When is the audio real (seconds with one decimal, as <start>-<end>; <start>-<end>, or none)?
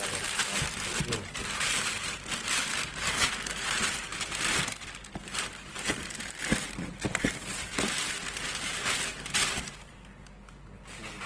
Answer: 0.0-2.7; 3.3-11.3